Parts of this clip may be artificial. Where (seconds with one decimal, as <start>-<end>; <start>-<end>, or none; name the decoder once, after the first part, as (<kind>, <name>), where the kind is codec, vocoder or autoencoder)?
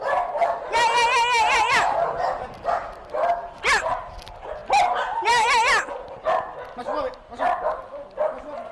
none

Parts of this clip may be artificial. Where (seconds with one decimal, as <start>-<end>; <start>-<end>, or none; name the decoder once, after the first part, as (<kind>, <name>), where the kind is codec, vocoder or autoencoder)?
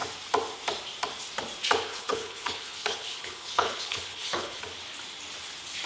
1.9-4.6 (codec, HILCodec)